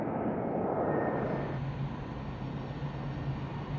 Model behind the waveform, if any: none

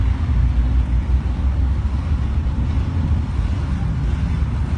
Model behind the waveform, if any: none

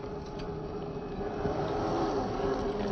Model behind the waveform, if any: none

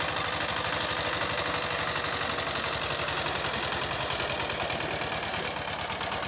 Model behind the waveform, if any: none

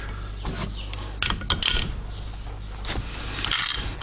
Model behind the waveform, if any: none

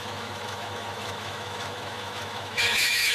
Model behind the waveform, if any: autoencoder, DAC-VAE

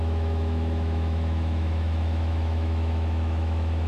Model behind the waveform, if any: autoencoder, DAC-VAE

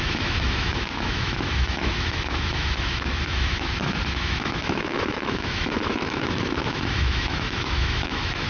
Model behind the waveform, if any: autoencoder, DAC-VAE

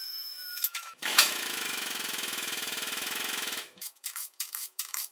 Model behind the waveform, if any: autoencoder, DAC-VAE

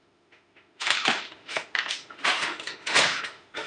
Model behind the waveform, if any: autoencoder, DAC-VAE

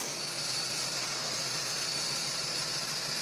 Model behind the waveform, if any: none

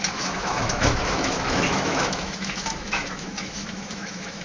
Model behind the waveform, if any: autoencoder, DAC-VAE